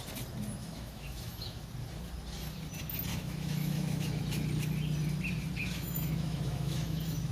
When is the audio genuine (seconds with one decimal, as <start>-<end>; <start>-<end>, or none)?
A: 0.0-0.6; 1.7-3.1; 4.2-5.6